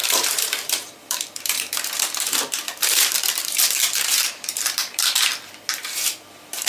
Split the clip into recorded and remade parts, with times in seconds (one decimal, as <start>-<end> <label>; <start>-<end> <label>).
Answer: 0.0-5.3 remade; 5.3-5.8 recorded; 5.8-6.7 remade